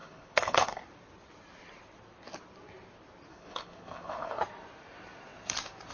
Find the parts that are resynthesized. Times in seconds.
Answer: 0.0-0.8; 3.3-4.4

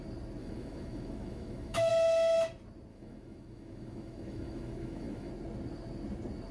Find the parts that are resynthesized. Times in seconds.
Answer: 0.4-1.9; 2.9-5.3

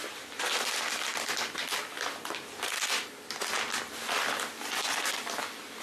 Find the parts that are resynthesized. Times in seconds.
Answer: none

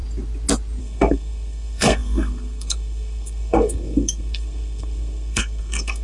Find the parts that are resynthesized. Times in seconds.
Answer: 0.8-6.0

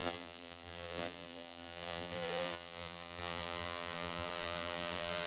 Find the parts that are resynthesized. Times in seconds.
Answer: 0.0-5.3

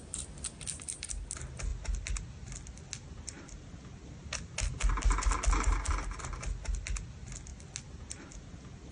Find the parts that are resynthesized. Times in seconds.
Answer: none

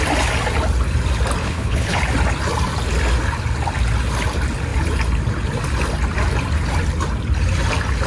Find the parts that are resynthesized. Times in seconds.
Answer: 1.4-2.0